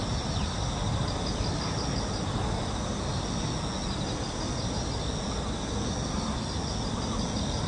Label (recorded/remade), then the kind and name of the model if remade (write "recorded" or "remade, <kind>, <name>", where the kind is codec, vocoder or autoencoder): recorded